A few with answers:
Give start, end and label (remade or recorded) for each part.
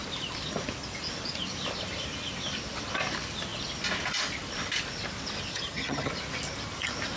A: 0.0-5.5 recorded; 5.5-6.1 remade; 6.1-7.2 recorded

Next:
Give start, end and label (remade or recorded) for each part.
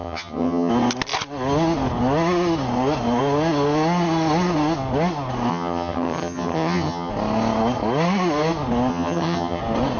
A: 0.0-0.7 remade; 0.7-5.5 recorded; 5.5-7.1 remade; 7.1-8.9 recorded; 8.9-9.6 remade; 9.6-10.0 recorded